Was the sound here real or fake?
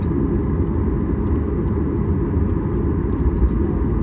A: real